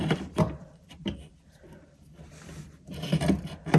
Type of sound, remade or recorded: remade